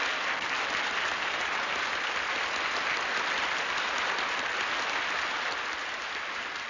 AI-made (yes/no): no